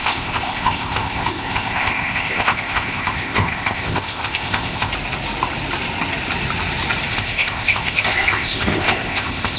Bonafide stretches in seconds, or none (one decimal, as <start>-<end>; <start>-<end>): 4.9-7.1